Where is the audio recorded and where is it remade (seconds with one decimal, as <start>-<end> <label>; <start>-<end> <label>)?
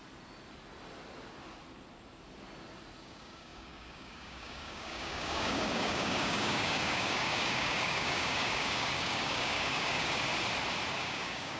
0.0-3.0 recorded; 3.0-10.3 remade; 10.3-10.9 recorded; 10.9-11.6 remade